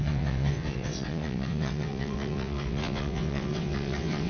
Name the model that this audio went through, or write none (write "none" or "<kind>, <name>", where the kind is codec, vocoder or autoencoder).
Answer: vocoder, WaveNeXt